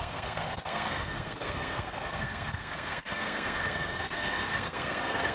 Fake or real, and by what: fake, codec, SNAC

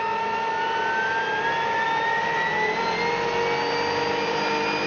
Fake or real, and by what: real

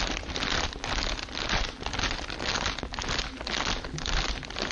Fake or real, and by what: real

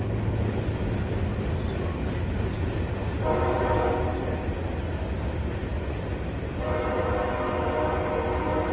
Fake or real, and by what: real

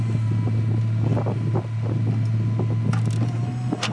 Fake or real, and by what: real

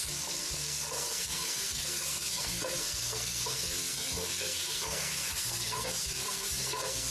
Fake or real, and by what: fake, codec, SNAC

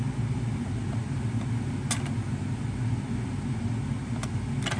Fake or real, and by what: real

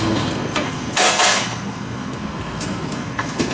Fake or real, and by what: fake, codec, SNAC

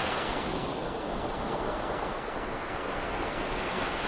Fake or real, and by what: fake, codec, SNAC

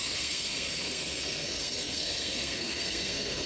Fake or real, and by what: fake, codec, SNAC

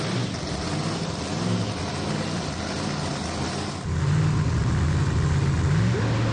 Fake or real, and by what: real